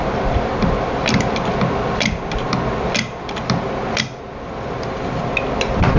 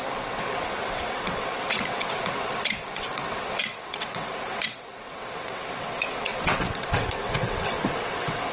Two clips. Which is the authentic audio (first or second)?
first